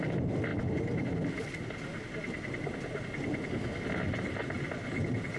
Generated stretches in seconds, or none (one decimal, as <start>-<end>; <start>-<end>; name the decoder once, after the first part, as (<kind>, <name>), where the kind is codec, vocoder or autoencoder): none